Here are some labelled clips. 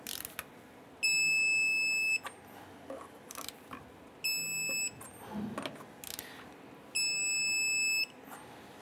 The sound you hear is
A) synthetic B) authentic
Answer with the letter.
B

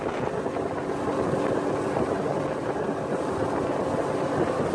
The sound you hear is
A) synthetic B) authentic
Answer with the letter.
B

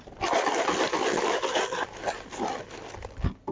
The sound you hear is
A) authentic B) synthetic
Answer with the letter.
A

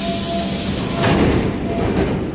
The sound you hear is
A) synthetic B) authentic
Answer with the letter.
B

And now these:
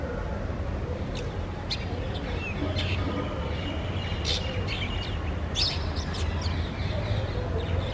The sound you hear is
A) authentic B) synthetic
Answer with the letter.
A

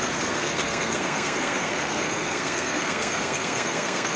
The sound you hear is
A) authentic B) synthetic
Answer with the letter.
B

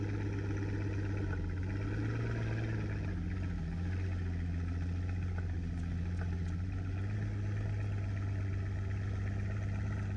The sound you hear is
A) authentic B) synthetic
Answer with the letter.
A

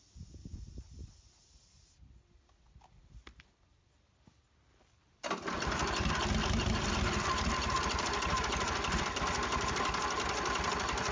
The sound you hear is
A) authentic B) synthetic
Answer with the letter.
A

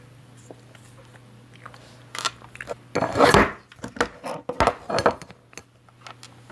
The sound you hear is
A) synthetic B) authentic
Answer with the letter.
B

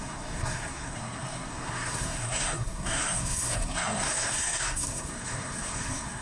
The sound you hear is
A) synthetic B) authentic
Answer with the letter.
A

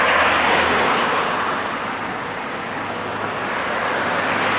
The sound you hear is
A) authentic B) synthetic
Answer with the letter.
A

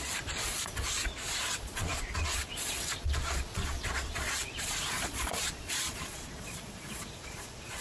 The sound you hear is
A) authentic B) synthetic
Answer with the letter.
B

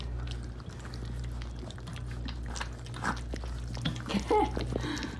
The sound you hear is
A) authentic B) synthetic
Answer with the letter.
A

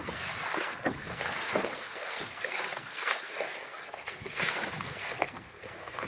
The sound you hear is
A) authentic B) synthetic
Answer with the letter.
B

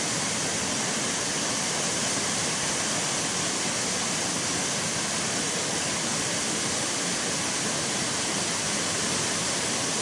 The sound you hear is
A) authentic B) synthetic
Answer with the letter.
A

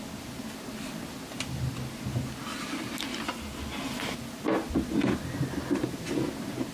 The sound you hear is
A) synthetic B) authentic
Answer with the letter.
B